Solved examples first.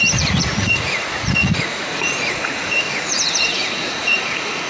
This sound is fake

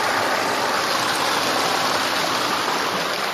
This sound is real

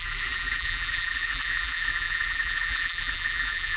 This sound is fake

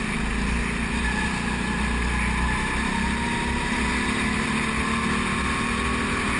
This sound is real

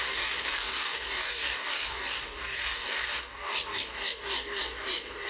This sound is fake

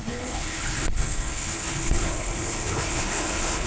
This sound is fake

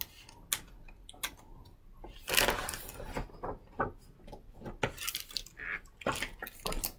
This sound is real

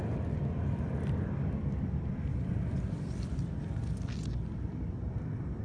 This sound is fake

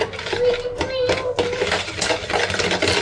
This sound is real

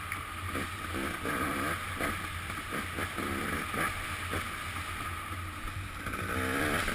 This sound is real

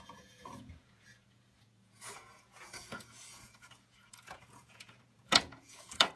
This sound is fake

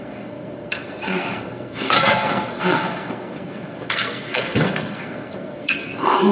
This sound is fake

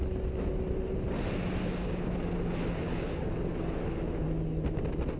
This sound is real